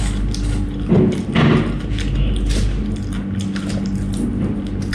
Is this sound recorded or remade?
recorded